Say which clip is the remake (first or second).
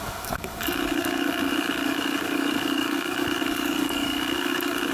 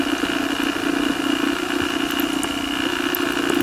first